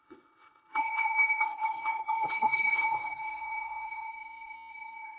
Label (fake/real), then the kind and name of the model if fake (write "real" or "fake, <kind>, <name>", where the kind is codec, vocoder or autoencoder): fake, codec, HILCodec